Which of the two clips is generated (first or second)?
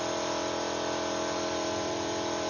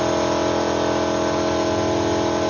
first